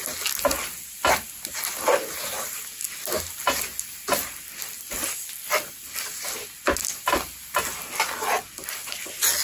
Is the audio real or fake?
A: real